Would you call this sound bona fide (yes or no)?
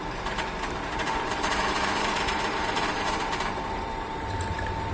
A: no